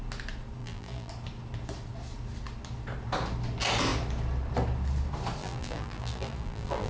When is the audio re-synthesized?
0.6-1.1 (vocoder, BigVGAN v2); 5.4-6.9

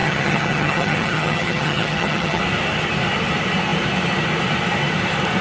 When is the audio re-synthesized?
0.0-2.4 (vocoder, HiFi-GAN)